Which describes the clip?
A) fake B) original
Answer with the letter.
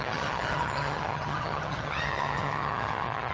A